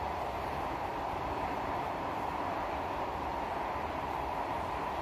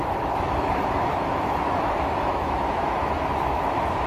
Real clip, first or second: first